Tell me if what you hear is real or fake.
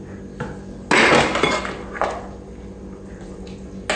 real